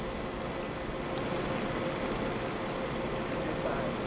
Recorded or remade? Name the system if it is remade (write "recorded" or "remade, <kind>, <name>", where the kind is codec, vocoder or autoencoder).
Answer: recorded